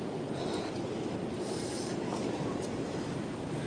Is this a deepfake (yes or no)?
yes